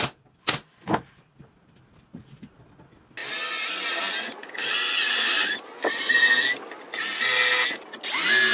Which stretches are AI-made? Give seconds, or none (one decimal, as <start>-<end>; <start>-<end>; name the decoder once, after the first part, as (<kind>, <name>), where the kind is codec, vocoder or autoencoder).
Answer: none